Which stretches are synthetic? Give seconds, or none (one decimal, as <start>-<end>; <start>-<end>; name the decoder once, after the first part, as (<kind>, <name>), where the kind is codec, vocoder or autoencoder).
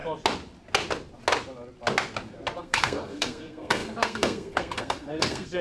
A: 2.6-5.6 (codec, SNAC)